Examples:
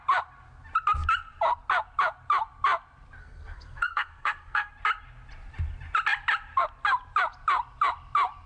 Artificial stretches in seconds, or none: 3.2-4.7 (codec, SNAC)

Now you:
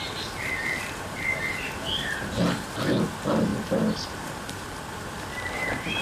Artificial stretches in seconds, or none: none

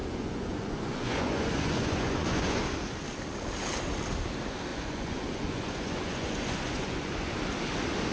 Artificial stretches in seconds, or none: 0.0-2.6 (vocoder, Vocos); 4.7-7.3

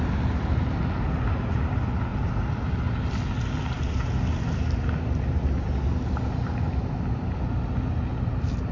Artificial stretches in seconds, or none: none

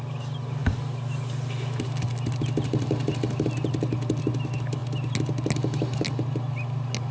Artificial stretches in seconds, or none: none